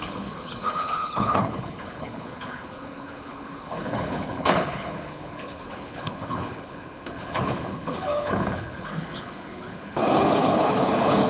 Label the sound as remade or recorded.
remade